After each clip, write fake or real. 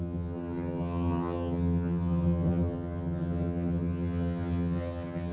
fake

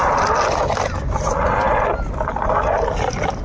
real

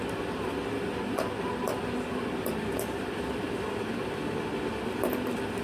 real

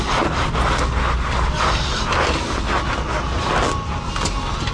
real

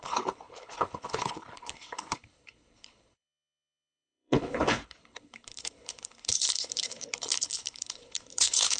fake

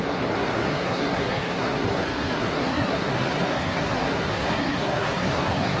fake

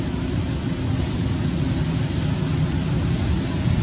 real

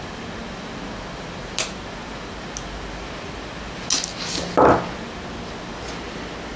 real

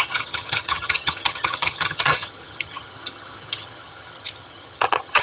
fake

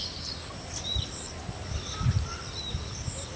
real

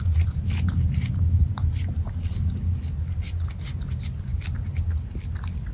real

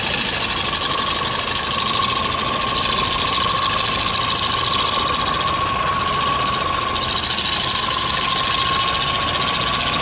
real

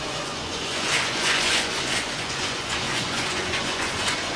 fake